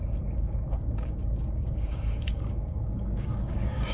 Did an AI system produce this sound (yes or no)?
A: yes